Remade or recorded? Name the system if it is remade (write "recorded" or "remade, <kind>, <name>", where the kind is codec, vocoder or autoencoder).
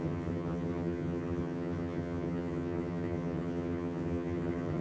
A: remade, vocoder, HiFi-GAN